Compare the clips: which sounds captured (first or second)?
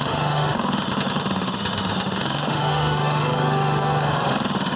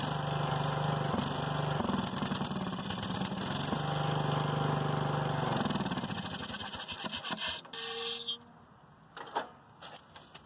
second